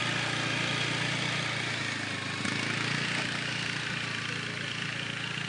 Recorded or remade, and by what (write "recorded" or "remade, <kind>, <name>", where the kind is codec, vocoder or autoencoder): recorded